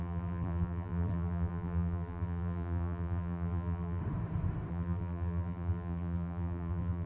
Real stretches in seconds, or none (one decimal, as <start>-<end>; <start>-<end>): 4.0-4.7